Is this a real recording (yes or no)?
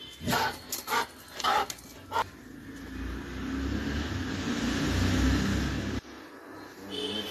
yes